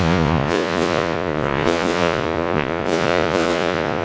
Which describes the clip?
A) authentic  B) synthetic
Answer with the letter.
B